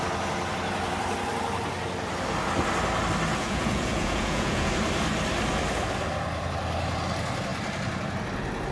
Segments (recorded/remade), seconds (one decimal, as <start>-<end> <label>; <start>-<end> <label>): 0.0-3.3 recorded; 3.3-4.7 remade; 4.7-8.7 recorded